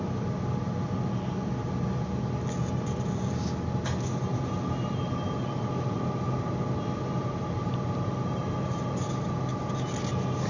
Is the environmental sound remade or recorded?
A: recorded